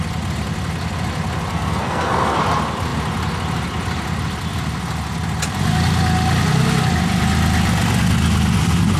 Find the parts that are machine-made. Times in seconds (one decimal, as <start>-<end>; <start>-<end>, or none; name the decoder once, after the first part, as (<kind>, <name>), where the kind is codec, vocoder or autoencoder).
1.5-2.4 (codec, SNAC)